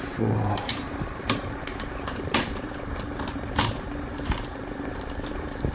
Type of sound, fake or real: fake